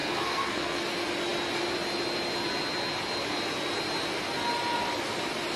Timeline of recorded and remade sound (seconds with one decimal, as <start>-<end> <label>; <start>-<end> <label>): 0.0-0.8 remade; 0.8-5.6 recorded